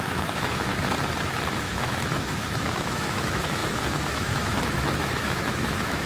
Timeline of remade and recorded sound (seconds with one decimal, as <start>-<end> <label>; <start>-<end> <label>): 0.0-0.7 remade; 0.7-1.6 recorded; 1.6-6.1 remade